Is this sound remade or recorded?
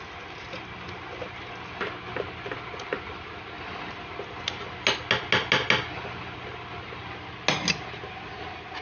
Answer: recorded